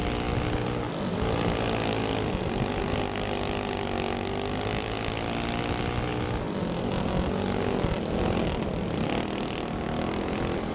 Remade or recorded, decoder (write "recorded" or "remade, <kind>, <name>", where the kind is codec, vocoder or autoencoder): recorded